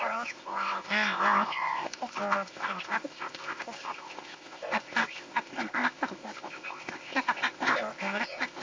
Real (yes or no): no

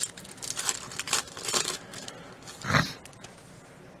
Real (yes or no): yes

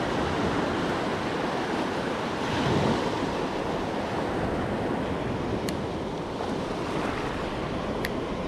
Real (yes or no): yes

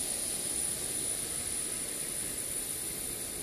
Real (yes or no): yes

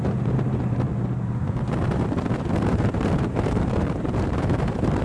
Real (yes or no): no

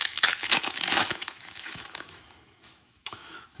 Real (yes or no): no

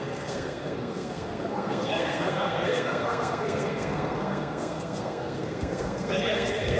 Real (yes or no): no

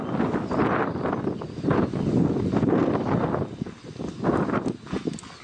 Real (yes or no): yes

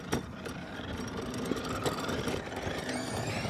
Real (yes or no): yes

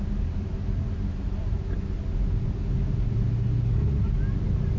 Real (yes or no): yes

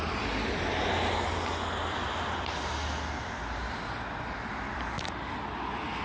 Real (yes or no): yes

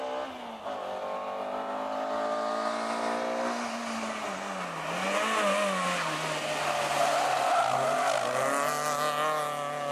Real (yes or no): yes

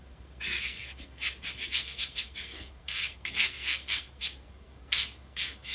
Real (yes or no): no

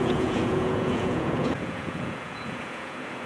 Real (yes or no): no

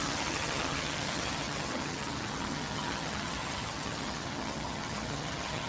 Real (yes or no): no